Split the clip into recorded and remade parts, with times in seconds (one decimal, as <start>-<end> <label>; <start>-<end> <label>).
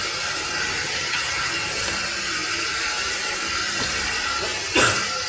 0.0-0.8 recorded; 0.8-1.5 remade; 1.5-5.3 recorded